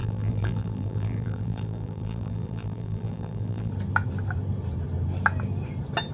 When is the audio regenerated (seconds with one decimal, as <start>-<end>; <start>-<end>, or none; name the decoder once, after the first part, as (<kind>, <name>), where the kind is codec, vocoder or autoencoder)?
0.0-3.7 (vocoder, BigVGAN v2)